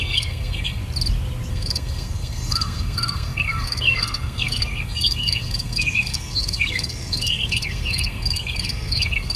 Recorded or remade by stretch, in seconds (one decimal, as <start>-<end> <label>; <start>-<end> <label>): 0.0-0.8 remade; 0.8-1.5 recorded; 1.5-9.4 remade